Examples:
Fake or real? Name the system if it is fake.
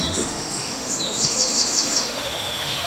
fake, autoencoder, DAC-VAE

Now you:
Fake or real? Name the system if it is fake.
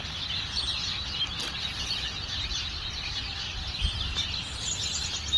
real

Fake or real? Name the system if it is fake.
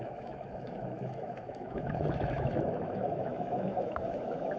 fake, autoencoder, DAC-VAE